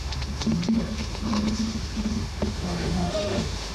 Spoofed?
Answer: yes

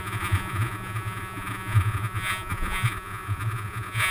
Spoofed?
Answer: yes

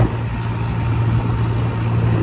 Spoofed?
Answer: no